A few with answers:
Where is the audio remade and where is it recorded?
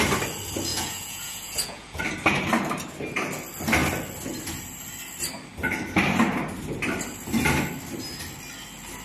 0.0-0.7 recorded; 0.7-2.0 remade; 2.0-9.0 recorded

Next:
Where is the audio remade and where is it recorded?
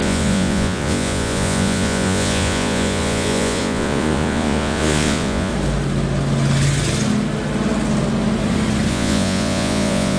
0.0-5.5 remade; 5.5-8.9 recorded; 8.9-10.2 remade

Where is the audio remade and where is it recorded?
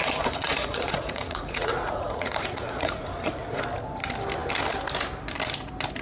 0.0-3.6 remade; 3.6-6.0 recorded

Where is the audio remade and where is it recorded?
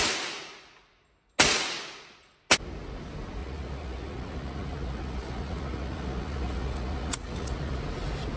0.0-3.4 recorded; 3.4-7.8 remade; 7.8-8.4 recorded